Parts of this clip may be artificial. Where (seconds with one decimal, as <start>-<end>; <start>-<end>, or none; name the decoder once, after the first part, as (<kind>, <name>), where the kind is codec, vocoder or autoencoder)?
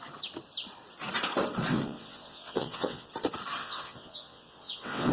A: 1.7-3.1 (vocoder, WaveNeXt); 3.6-5.1